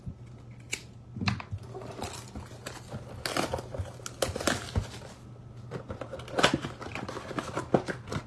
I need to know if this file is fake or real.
real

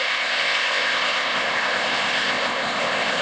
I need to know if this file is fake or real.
fake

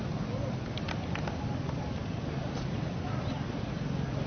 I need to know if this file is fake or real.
real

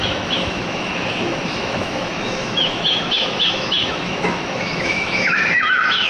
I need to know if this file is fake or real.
fake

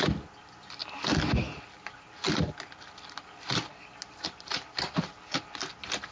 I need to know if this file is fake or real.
real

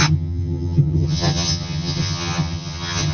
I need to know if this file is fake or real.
fake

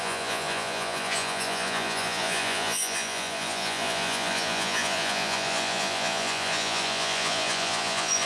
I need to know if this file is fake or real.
fake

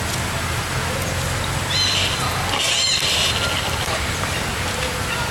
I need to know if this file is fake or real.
real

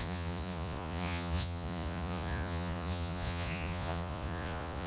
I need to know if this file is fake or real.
fake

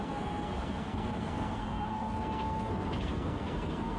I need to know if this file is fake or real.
fake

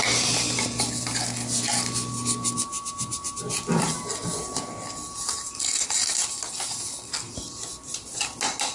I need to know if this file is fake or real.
real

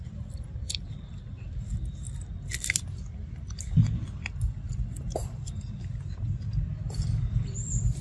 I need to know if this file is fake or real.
real